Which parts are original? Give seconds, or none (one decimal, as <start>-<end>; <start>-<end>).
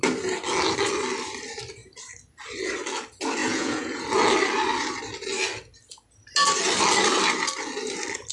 0.0-3.4; 4.0-8.3